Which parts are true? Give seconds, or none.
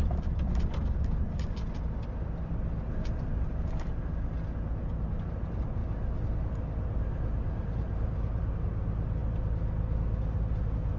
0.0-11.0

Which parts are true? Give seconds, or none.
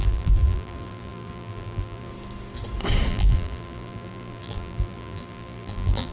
2.1-3.1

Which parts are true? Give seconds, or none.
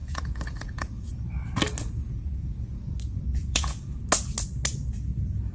1.3-2.0; 2.8-3.4; 4.0-5.5